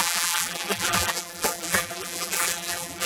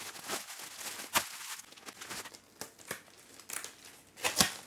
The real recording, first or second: second